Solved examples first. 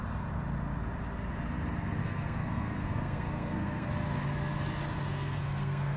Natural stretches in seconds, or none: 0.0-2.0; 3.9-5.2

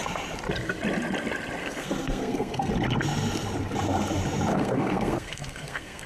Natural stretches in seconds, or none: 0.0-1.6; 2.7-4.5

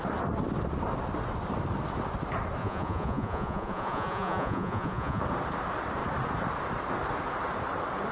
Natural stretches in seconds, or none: 0.0-2.6; 5.2-8.1